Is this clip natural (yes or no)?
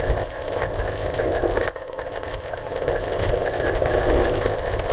no